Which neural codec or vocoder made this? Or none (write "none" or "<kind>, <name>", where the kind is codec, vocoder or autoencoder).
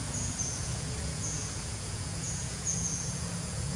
vocoder, Vocos